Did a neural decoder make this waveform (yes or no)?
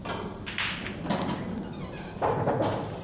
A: no